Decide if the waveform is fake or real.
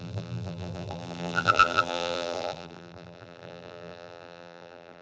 fake